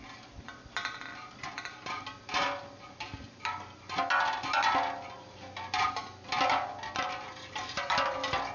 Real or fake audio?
real